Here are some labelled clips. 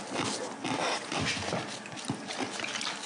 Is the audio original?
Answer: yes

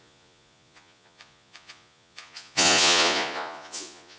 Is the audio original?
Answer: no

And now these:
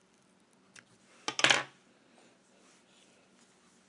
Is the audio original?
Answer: yes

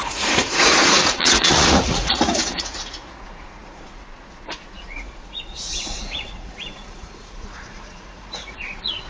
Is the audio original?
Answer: no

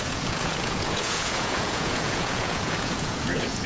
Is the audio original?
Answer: no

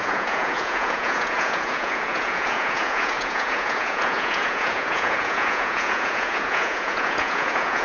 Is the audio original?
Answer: no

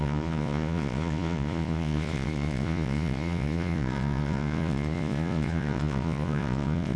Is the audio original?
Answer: no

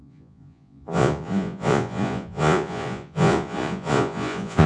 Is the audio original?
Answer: no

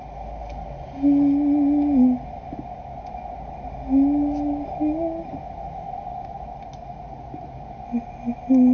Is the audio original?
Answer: yes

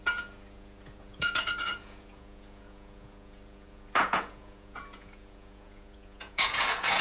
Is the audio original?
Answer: no